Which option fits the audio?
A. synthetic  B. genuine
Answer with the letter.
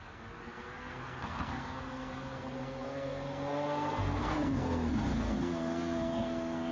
A